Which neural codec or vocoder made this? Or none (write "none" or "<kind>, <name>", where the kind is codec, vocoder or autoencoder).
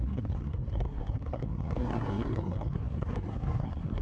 codec, SNAC